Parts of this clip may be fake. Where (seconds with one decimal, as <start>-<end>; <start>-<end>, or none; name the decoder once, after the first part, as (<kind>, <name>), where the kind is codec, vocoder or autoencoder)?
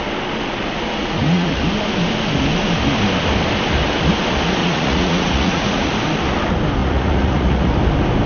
1.0-1.6 (vocoder, Vocos); 4.6-5.9; 6.8-7.7